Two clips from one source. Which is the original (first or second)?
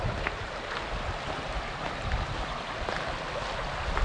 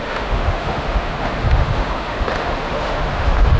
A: first